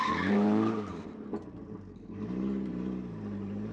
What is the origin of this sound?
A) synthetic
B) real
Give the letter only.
A